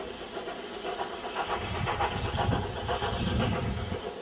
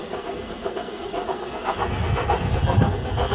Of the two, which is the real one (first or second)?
first